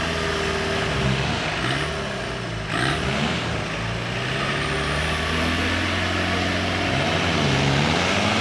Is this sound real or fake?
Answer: real